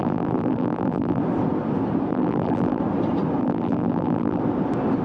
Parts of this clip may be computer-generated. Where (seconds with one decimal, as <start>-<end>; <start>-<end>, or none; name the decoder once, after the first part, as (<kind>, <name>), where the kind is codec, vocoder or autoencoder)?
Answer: 0.0-1.2 (vocoder, BigVGAN v2); 2.1-2.8; 3.4-4.4